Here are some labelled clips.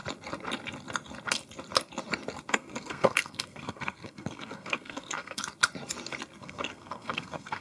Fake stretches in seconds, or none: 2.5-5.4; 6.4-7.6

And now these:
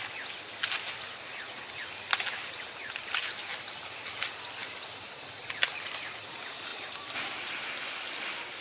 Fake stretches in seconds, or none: 4.6-5.4; 6.7-8.1

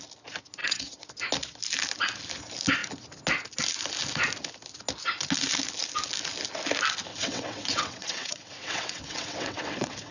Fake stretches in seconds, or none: 0.6-1.1; 7.1-10.1